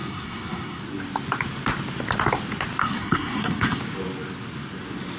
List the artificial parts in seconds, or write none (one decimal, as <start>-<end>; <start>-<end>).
0.0-0.8; 2.8-3.8